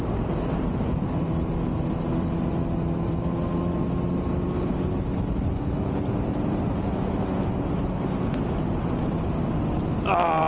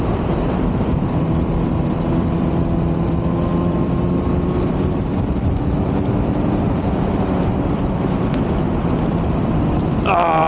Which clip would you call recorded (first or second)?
first